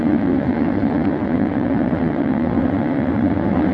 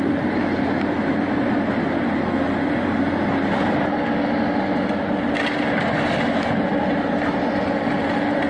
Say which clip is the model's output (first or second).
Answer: first